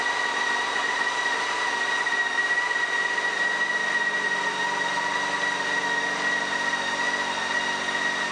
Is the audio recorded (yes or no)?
yes